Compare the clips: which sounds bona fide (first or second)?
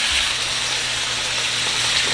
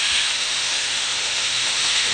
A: first